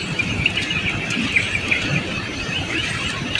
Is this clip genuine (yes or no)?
no